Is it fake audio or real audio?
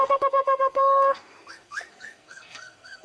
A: fake